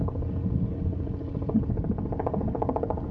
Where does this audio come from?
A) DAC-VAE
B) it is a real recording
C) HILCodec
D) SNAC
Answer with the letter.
B